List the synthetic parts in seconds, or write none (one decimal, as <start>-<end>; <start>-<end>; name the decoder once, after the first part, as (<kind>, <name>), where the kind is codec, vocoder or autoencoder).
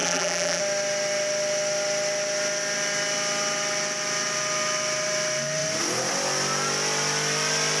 0.0-0.6 (vocoder, BigVGAN v2)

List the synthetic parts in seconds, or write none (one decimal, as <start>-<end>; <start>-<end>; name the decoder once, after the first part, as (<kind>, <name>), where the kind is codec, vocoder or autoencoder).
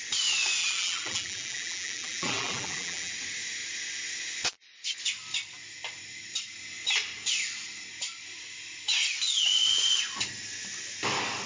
0.6-3.1 (vocoder, BigVGAN v2)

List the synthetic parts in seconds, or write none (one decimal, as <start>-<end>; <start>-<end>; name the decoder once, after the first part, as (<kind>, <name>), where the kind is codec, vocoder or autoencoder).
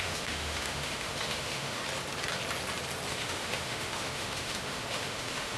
0.0-1.8 (autoencoder, DAC-VAE); 3.1-5.6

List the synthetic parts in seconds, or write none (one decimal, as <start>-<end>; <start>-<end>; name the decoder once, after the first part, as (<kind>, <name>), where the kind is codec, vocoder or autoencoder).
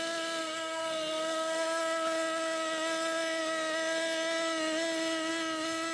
0.4-1.8 (codec, SNAC)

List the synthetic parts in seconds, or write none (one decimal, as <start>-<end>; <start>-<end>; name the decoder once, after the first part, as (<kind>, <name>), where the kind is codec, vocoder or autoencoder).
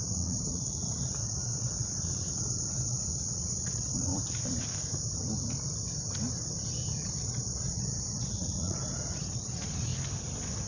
0.0-4.1 (vocoder, Vocos); 7.2-9.9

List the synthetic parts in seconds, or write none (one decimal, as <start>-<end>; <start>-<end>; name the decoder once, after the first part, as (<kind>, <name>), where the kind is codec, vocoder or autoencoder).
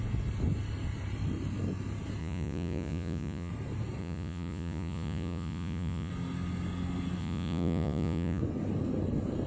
2.2-3.5 (vocoder, Vocos); 4.0-6.1; 7.2-8.4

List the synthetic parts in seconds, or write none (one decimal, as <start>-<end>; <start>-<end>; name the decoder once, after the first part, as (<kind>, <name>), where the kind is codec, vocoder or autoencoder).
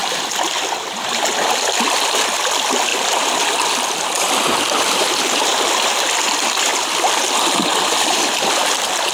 2.1-6.7 (vocoder, BigVGAN v2); 7.9-9.1